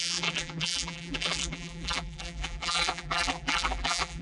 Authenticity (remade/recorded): remade